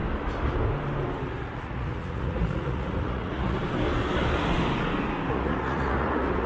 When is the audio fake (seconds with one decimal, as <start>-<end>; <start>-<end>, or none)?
1.3-3.6; 5.3-6.5